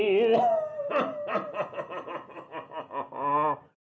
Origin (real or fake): real